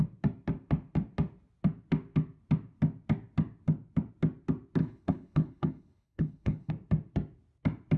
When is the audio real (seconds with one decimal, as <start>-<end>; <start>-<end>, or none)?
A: 0.0-4.8; 6.7-8.0